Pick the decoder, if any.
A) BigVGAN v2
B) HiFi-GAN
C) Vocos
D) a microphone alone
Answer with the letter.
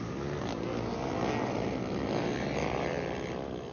D